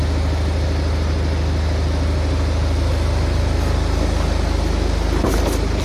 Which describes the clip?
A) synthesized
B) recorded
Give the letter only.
B